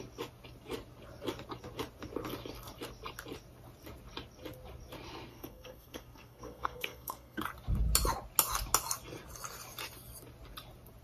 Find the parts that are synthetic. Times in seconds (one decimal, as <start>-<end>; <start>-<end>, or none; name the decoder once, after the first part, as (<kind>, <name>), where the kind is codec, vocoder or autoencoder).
5.3-7.4 (codec, SNAC)